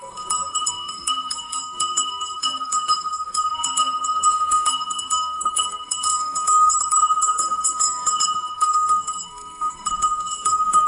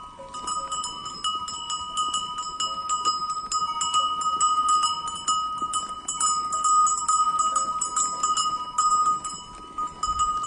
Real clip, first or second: second